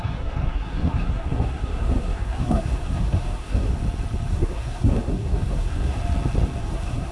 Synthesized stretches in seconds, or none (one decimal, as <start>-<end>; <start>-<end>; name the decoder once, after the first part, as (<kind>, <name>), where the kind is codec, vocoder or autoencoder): 0.0-3.7 (codec, SNAC); 4.3-6.0; 6.6-7.1